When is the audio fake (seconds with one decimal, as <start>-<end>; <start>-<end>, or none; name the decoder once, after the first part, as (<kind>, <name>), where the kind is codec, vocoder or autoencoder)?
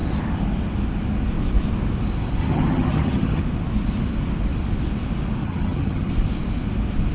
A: 2.4-3.4 (vocoder, HiFi-GAN); 5.4-6.1